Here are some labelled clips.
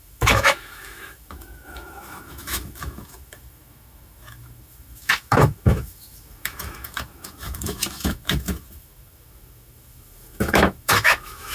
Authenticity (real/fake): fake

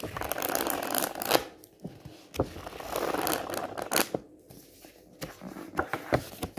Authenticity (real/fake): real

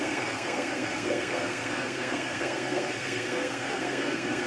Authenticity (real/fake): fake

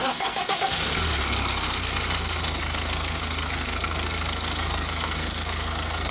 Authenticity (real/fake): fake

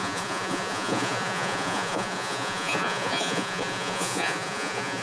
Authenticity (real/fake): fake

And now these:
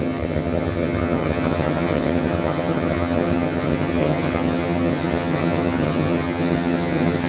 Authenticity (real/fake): fake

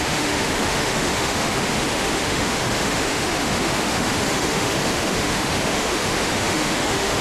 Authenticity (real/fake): fake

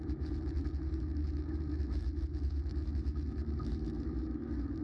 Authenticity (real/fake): fake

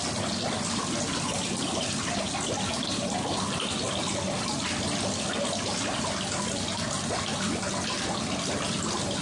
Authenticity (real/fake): real